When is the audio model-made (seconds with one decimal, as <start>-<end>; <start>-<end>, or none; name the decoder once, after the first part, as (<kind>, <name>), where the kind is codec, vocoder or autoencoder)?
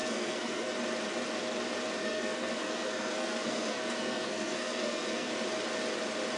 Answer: 0.0-0.7 (codec, SNAC); 2.0-5.3